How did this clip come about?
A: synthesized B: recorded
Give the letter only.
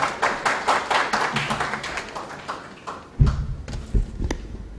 B